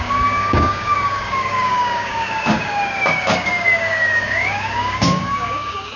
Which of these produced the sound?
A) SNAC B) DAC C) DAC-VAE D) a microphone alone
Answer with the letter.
B